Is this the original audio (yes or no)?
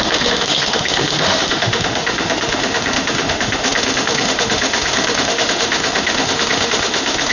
no